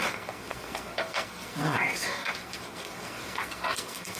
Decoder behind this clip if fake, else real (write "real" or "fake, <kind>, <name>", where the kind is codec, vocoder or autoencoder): fake, codec, SNAC